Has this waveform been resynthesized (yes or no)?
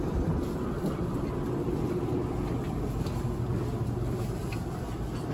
yes